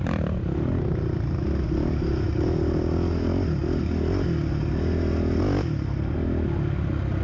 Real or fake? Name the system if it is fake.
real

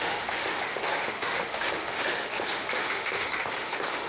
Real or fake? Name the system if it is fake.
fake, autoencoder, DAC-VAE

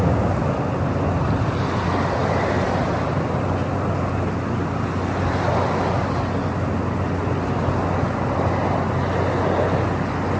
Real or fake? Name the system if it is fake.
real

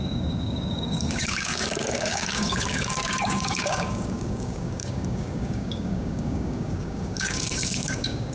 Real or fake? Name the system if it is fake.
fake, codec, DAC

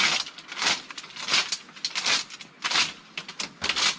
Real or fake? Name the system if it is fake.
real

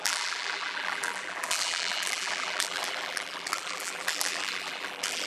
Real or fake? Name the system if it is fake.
fake, vocoder, BigVGAN v2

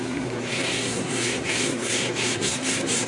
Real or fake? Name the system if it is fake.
fake, codec, SNAC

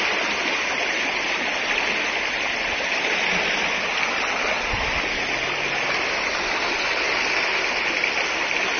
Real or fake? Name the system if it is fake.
real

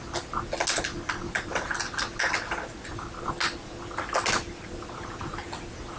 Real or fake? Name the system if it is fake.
real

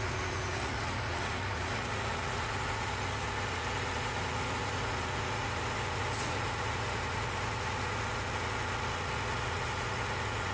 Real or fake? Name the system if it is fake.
fake, vocoder, Vocos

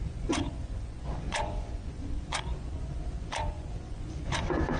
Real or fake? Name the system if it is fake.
fake, vocoder, Vocos